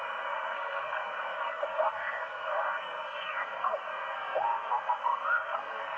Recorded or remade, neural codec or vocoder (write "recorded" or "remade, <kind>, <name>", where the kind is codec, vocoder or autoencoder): remade, codec, SNAC